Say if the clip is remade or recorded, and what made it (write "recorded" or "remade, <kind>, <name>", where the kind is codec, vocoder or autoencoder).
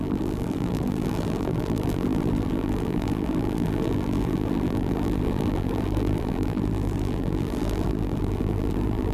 remade, vocoder, BigVGAN v2